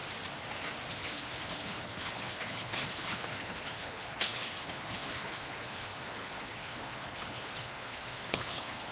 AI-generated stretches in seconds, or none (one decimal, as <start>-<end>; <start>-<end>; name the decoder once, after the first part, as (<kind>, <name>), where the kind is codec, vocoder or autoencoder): 0.9-8.9 (codec, HILCodec)